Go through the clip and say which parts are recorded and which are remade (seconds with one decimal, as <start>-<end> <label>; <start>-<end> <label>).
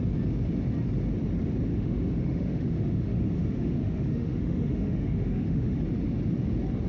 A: 0.0-1.7 recorded; 1.7-5.8 remade; 5.8-6.9 recorded